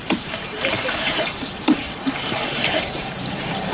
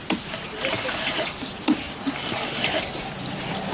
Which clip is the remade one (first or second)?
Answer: first